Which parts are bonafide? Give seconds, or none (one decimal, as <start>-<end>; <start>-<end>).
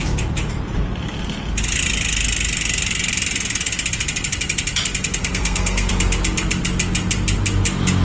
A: 0.0-5.2; 5.9-8.0